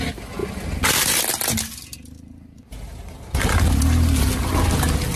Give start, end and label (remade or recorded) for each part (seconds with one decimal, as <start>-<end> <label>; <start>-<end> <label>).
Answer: 0.0-5.2 recorded